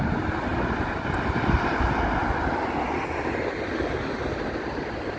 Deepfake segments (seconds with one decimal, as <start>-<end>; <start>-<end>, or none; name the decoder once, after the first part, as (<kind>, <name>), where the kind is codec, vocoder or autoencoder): none

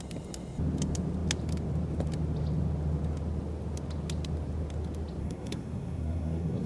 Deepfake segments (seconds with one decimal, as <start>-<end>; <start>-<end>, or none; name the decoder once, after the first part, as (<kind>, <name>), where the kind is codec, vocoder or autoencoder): 5.2-6.7 (codec, SNAC)

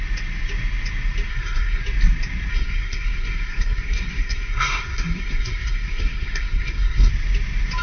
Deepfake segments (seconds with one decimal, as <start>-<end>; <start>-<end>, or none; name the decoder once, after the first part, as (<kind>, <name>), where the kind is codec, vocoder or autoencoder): 1.3-1.8 (codec, SNAC); 2.5-7.1

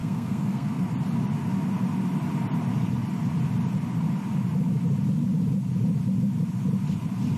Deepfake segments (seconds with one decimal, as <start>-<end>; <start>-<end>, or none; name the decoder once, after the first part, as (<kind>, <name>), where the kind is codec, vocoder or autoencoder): 0.0-0.8 (codec, SNAC)